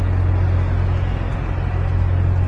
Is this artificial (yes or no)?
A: no